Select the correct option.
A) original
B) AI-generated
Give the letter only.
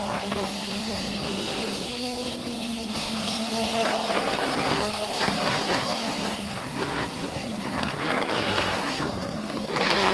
B